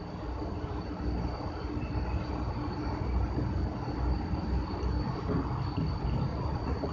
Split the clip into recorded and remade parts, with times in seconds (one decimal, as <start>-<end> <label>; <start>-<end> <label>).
0.0-6.3 recorded; 6.3-6.9 remade